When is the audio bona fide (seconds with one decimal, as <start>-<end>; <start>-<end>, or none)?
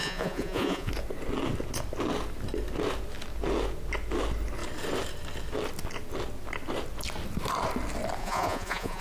0.9-8.2